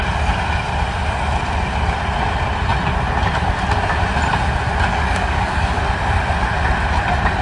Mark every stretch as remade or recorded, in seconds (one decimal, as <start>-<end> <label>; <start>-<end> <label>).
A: 0.0-4.9 recorded; 4.9-5.8 remade; 5.8-7.4 recorded